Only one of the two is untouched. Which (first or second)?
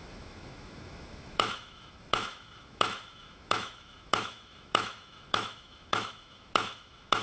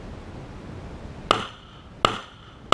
second